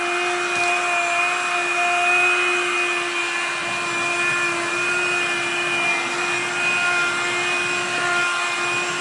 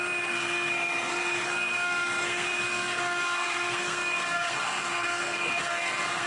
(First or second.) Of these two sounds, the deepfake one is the second